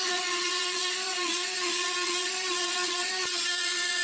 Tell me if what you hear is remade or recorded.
remade